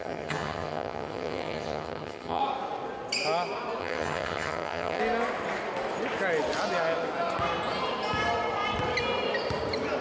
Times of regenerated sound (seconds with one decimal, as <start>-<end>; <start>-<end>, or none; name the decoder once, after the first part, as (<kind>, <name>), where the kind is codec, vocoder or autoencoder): 0.0-2.4 (vocoder, HiFi-GAN); 3.8-5.0